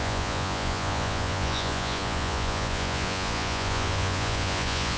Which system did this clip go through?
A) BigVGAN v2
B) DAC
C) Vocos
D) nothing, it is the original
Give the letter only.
C